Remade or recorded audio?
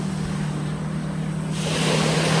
recorded